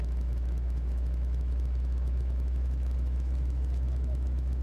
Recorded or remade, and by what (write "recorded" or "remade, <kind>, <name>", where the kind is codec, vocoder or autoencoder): remade, autoencoder, DAC-VAE